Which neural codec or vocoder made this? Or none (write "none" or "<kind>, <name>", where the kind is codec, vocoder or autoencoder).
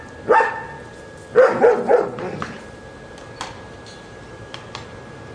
none